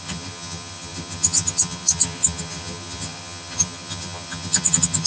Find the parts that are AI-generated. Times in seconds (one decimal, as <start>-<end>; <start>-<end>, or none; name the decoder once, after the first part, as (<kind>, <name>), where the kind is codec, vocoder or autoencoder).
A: 0.0-5.1 (vocoder, HiFi-GAN)